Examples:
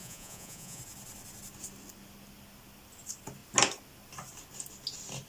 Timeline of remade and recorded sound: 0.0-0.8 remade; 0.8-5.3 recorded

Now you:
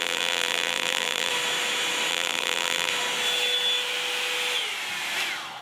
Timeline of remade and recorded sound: 0.0-1.3 remade; 1.3-2.1 recorded; 2.1-2.9 remade; 2.9-5.6 recorded

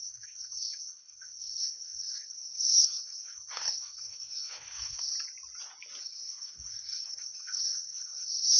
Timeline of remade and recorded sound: 0.0-5.1 remade; 5.1-6.0 recorded; 6.0-8.6 remade

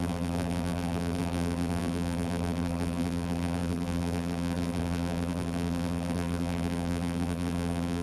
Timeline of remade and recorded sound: 0.0-8.0 remade

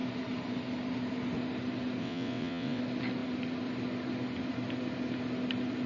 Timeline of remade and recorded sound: 0.0-2.0 recorded; 2.0-2.8 remade; 2.8-5.9 recorded

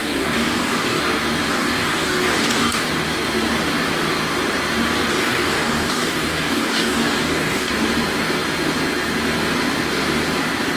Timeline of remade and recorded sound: 0.0-1.0 remade; 1.0-1.5 recorded; 1.5-2.9 remade; 2.9-5.1 recorded; 5.1-7.7 remade; 7.7-10.8 recorded